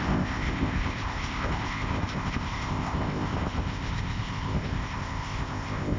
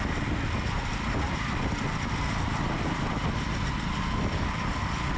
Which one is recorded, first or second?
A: second